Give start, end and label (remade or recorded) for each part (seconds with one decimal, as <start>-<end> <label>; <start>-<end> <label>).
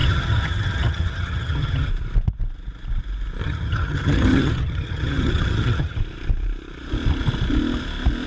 0.0-1.9 remade; 1.9-3.4 recorded; 3.4-6.0 remade; 6.0-8.3 recorded